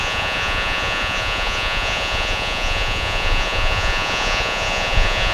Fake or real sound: fake